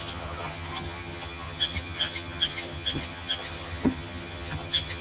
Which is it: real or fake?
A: fake